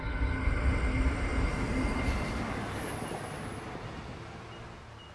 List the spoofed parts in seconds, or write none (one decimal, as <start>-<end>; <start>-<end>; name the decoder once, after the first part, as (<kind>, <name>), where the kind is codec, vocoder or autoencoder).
none